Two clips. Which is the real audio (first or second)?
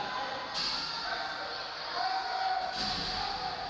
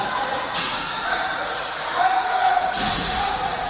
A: first